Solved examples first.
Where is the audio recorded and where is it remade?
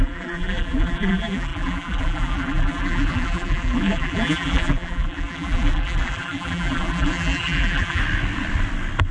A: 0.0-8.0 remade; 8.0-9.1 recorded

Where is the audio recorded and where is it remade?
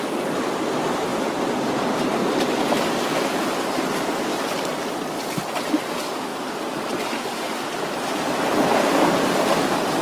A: 0.0-1.1 recorded; 1.1-3.8 remade; 3.8-4.3 recorded; 4.3-5.3 remade; 5.3-6.3 recorded; 6.3-8.1 remade; 8.1-10.0 recorded